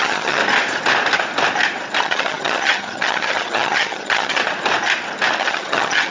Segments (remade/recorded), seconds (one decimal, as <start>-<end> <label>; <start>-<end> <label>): 0.0-0.4 remade; 0.4-2.0 recorded; 2.0-4.4 remade; 4.4-5.4 recorded; 5.4-6.1 remade